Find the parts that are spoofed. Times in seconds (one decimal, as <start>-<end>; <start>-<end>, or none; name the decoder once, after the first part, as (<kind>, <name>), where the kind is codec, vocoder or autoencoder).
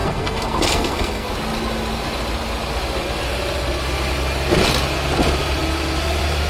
0.0-1.3 (codec, SNAC)